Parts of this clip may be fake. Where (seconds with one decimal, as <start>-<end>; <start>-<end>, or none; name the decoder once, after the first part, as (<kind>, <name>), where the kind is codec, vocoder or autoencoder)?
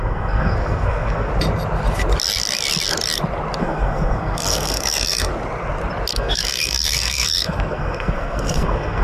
0.0-1.3 (codec, SNAC); 3.6-5.3; 6.1-9.0